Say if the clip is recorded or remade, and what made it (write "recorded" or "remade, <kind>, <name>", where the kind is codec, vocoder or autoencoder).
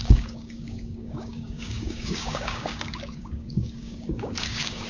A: remade, codec, DAC